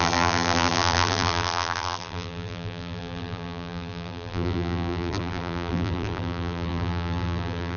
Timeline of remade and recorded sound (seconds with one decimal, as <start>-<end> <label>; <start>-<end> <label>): 0.0-7.8 remade